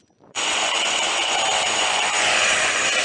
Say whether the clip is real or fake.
fake